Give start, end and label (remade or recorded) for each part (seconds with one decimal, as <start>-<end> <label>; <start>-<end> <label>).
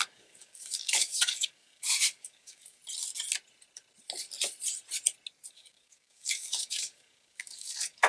0.0-2.8 remade; 2.8-5.5 recorded; 5.5-8.1 remade